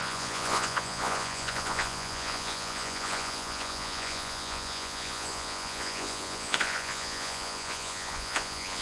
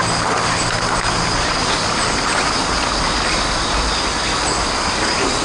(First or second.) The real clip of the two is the second